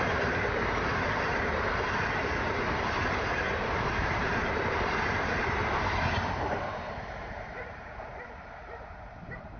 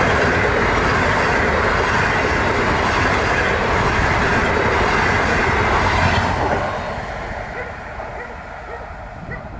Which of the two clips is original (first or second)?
second